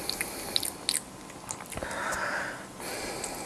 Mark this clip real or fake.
real